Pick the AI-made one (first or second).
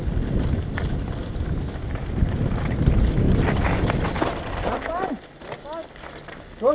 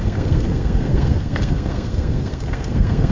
second